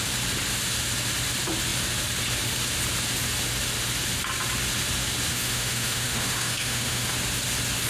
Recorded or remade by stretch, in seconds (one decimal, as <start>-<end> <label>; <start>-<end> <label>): 0.0-5.3 recorded; 5.3-7.1 remade; 7.1-7.9 recorded